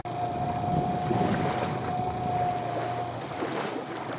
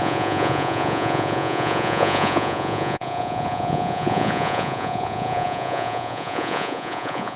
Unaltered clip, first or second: first